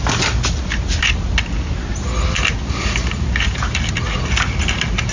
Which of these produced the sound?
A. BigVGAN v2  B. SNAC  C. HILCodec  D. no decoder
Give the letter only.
D